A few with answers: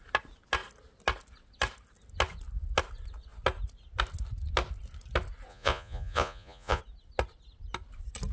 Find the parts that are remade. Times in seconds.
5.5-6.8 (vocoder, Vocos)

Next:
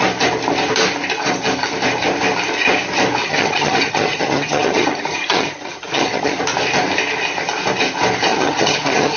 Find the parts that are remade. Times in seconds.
3.2-6.4 (vocoder, HiFi-GAN); 8.3-9.2

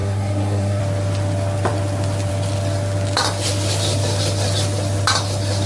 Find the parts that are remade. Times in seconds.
0.0-0.8 (codec, SNAC)

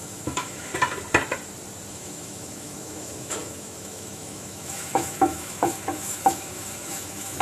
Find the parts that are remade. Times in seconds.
0.0-0.7 (autoencoder, DAC-VAE); 1.9-7.4

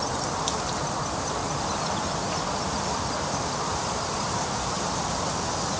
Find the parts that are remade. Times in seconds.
none

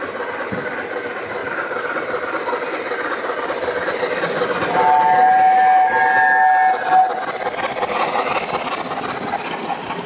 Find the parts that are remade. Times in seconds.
1.4-4.0 (vocoder, BigVGAN v2)